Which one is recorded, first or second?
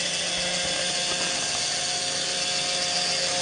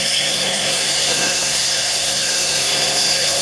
first